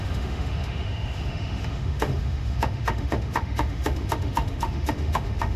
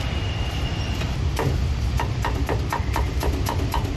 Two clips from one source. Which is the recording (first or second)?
second